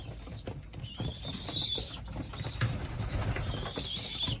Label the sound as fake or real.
real